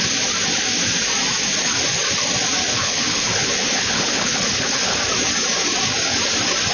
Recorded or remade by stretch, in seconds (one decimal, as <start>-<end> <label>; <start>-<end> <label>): 0.0-2.7 recorded; 2.7-5.0 remade; 5.0-6.7 recorded